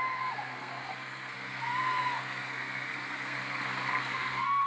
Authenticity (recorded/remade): remade